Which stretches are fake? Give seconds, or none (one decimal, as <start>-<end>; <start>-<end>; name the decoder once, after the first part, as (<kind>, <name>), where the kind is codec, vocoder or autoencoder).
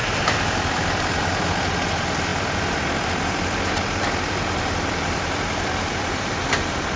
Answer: 0.0-7.0 (vocoder, BigVGAN v2)